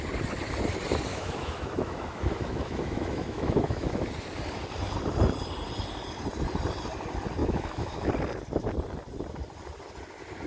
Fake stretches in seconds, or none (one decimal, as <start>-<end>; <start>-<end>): 1.1-4.1; 7.4-8.1